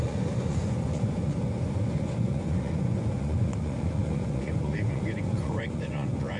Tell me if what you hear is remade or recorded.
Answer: remade